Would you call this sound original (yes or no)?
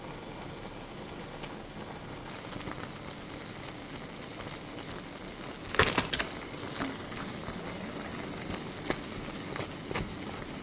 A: yes